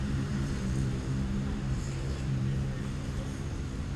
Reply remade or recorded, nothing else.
remade